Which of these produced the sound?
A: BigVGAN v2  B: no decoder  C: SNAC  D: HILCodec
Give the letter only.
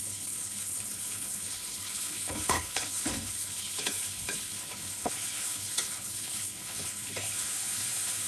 D